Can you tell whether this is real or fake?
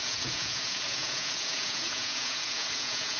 fake